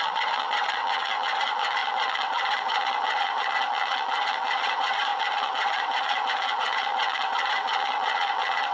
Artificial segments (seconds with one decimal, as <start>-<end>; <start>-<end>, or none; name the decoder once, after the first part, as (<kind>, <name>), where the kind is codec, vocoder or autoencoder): 0.0-8.7 (vocoder, WaveNeXt)